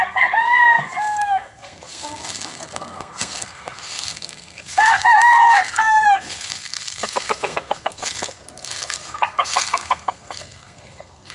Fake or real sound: fake